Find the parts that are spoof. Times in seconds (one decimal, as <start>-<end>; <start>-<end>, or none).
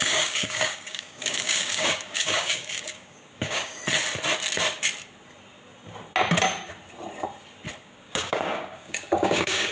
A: 0.0-3.8; 7.8-9.7